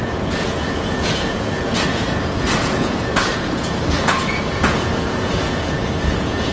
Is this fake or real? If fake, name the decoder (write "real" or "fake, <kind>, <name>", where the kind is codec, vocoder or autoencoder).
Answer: fake, vocoder, Vocos